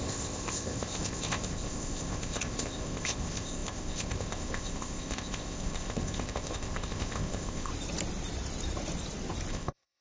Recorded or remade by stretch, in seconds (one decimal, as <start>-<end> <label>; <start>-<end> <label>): 0.0-7.7 remade; 7.7-9.5 recorded; 9.5-10.0 remade